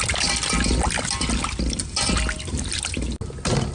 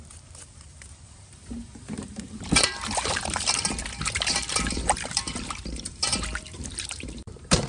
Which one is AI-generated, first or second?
second